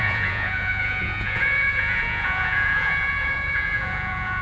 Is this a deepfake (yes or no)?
yes